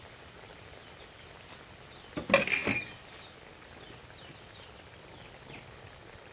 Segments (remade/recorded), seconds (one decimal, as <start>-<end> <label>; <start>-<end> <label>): 0.0-6.3 recorded

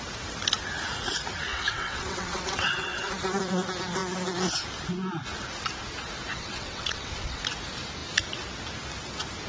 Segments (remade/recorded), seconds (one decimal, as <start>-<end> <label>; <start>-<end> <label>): 0.0-1.5 recorded; 1.5-3.1 remade; 3.1-6.3 recorded; 6.3-7.4 remade; 7.4-9.5 recorded